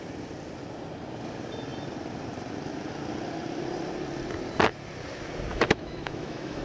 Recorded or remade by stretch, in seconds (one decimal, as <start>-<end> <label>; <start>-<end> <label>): 0.0-5.5 recorded; 5.5-6.6 remade